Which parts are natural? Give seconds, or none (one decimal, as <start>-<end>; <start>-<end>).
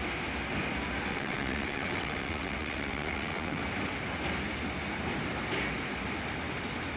0.0-1.1; 3.6-7.0